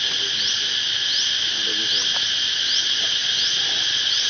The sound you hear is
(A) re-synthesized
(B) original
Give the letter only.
B